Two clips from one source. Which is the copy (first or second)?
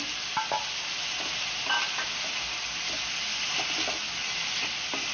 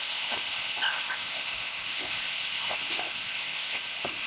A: second